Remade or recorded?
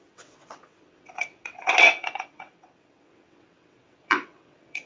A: remade